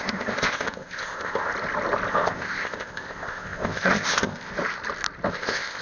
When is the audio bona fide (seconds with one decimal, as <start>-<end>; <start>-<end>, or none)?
1.5-2.1; 4.5-5.3